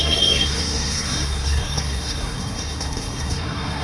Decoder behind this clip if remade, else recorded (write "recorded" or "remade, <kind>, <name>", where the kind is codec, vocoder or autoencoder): remade, codec, SNAC